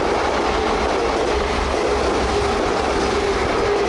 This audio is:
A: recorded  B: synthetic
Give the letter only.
A